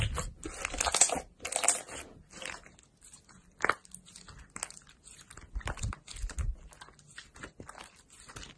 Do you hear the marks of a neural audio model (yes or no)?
no